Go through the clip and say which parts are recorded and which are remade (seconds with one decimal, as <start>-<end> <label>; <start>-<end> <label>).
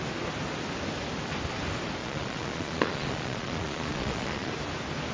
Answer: 0.0-2.0 recorded; 2.0-4.5 remade; 4.5-5.1 recorded